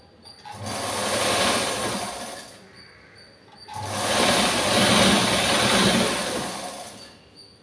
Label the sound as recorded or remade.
recorded